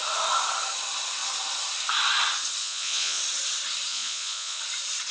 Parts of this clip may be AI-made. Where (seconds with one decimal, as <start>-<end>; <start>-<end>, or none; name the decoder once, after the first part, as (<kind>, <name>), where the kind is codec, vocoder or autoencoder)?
2.6-3.2 (vocoder, Vocos); 3.9-4.6